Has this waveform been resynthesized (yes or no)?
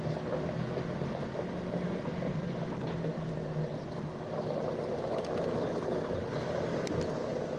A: no